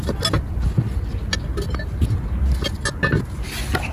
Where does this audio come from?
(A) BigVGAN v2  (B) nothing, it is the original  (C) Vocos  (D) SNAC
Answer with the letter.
B